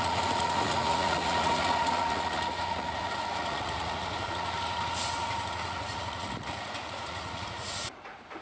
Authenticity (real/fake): fake